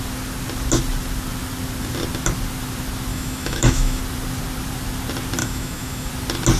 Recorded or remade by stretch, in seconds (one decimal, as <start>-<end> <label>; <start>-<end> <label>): 0.0-3.1 recorded; 3.1-4.0 remade; 4.0-5.4 recorded; 5.4-6.1 remade; 6.1-6.6 recorded